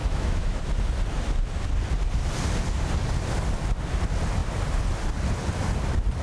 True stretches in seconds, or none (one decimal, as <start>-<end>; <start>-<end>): 0.6-6.2